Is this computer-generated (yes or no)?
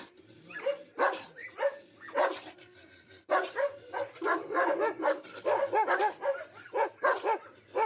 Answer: no